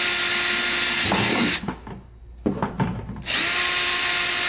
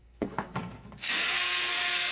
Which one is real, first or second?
first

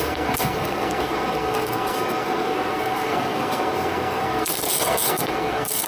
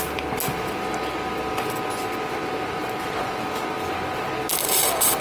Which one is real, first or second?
second